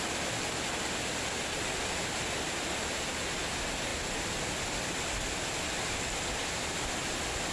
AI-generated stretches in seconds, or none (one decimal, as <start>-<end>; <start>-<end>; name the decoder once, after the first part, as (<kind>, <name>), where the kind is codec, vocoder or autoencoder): none